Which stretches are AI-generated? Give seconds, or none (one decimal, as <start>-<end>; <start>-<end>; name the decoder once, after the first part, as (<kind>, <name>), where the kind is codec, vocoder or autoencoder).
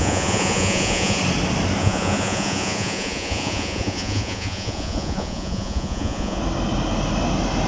0.0-1.2 (vocoder, Vocos); 1.8-6.4